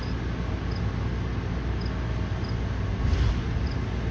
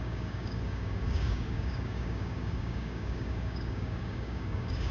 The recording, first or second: first